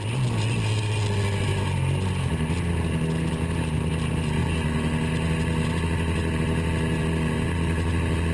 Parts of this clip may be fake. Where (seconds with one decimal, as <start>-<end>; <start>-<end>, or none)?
none